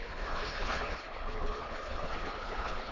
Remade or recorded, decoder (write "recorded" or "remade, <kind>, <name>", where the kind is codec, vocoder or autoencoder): remade, codec, HILCodec